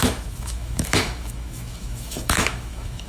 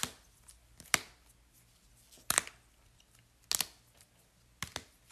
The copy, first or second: first